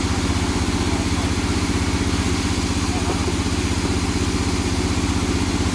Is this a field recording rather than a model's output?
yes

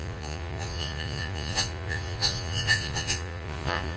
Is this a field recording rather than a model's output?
no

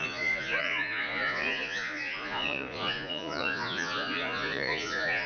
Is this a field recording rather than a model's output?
no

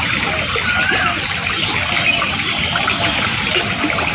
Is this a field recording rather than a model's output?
yes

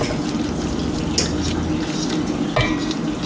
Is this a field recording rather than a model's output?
yes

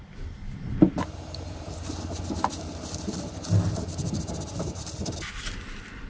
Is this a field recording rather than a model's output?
yes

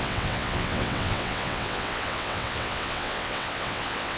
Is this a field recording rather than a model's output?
no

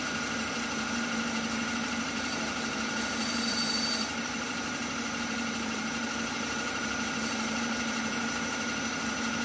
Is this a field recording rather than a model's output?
no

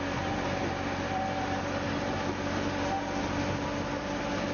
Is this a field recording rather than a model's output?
yes